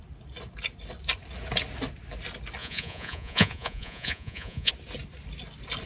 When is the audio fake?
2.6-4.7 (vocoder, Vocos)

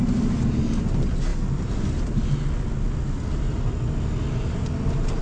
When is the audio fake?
none

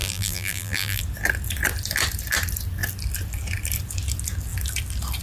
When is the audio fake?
0.0-1.0 (vocoder, BigVGAN v2)

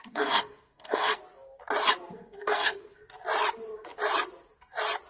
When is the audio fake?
0.0-1.2 (codec, SNAC); 2.1-3.0

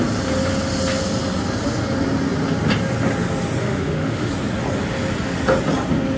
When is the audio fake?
3.6-4.3 (autoencoder, DAC-VAE)

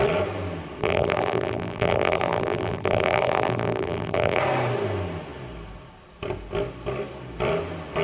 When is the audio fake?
0.8-4.4 (vocoder, BigVGAN v2)

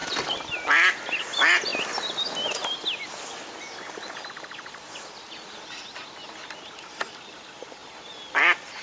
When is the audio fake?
none